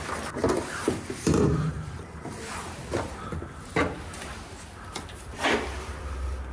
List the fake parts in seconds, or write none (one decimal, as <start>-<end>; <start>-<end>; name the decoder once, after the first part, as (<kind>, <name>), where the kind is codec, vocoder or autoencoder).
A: 0.4-2.4 (vocoder, BigVGAN v2)